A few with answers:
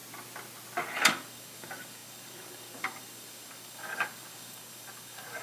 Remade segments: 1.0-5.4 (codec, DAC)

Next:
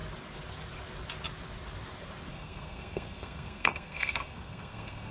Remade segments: 2.3-5.1 (codec, SNAC)

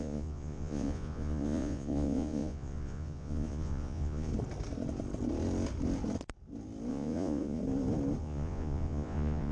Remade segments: 0.0-4.3 (vocoder, Vocos); 6.9-7.6; 8.2-9.5